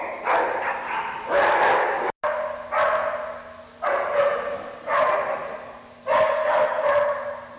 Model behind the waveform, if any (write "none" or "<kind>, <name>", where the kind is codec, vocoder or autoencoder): none